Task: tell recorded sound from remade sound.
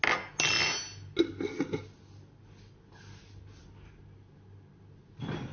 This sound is recorded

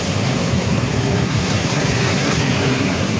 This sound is remade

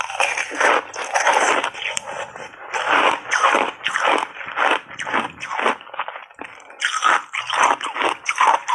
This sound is remade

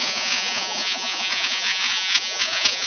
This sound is remade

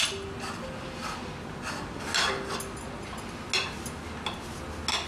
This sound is recorded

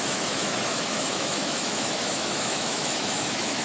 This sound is remade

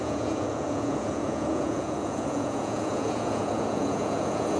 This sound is remade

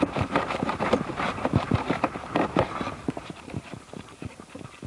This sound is remade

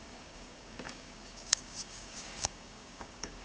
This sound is remade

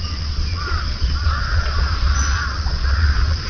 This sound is remade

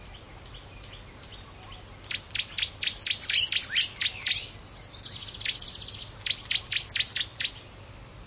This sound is recorded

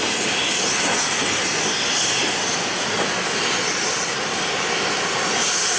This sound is recorded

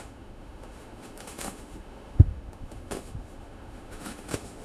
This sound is remade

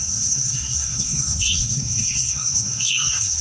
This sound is remade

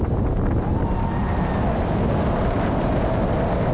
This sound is recorded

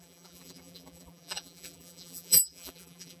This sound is remade